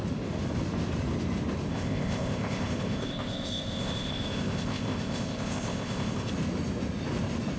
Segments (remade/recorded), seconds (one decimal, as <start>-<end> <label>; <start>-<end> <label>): 0.0-1.7 recorded; 1.7-6.3 remade; 6.3-7.6 recorded